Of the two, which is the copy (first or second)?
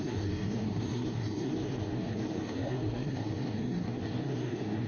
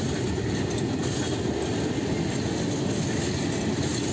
first